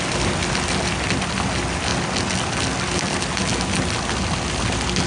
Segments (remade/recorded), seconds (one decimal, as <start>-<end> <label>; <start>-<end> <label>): 0.0-5.1 recorded